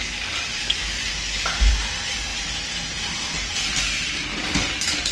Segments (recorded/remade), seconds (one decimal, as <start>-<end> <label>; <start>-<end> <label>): 0.0-0.6 recorded; 0.6-1.7 remade; 1.7-4.3 recorded; 4.3-5.1 remade